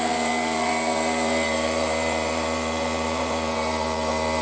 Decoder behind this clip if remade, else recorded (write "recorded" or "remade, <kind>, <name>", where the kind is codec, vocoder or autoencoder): remade, vocoder, BigVGAN v2